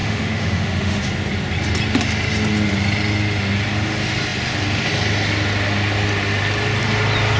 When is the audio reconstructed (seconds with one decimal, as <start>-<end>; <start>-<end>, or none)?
0.0-1.0